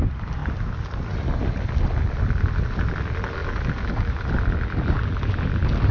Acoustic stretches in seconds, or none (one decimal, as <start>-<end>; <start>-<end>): 0.0-5.9